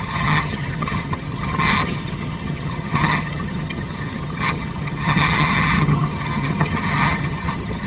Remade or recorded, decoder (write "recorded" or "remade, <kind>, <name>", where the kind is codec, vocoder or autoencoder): remade, vocoder, HiFi-GAN